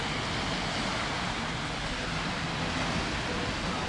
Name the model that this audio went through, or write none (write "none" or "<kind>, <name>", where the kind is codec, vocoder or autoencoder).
none